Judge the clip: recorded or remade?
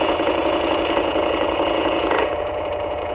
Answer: remade